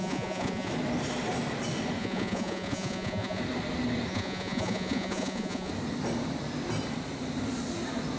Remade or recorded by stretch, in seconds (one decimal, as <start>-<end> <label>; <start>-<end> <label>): 0.0-0.7 remade; 0.7-2.0 recorded; 2.0-3.4 remade; 3.4-4.1 recorded; 4.1-5.7 remade; 5.7-8.2 recorded